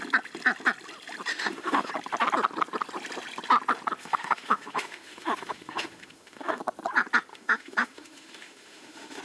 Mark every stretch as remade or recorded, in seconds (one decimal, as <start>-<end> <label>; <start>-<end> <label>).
0.0-1.3 recorded; 1.3-1.9 remade; 1.9-4.0 recorded; 4.0-6.6 remade; 6.6-7.3 recorded; 7.3-9.2 remade